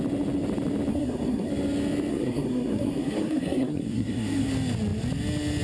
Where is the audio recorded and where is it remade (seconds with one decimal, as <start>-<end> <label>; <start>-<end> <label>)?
0.0-0.9 recorded; 0.9-1.5 remade; 1.5-2.1 recorded; 2.1-4.5 remade; 4.5-5.6 recorded

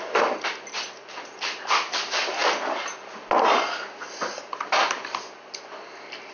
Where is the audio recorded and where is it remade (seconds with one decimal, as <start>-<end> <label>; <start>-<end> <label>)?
0.0-6.3 recorded

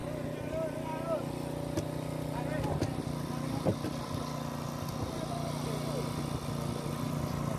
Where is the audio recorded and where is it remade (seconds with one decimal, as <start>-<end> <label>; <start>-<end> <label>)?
0.0-7.6 recorded